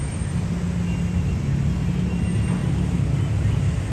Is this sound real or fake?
real